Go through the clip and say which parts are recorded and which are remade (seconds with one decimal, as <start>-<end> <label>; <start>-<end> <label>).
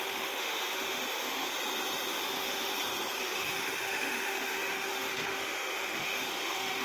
0.0-1.5 remade; 1.5-2.1 recorded; 2.1-2.7 remade; 2.7-3.2 recorded; 3.2-6.8 remade